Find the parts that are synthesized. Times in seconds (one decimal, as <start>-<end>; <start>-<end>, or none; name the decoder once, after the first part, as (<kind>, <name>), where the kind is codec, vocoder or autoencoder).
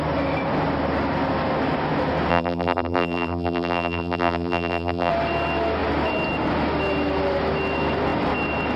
2.3-5.1 (vocoder, BigVGAN v2)